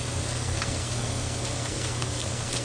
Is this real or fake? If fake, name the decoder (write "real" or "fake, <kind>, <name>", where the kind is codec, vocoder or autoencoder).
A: fake, codec, SNAC